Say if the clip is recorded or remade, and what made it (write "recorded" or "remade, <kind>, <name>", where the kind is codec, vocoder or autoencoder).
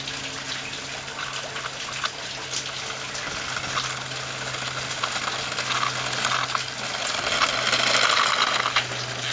recorded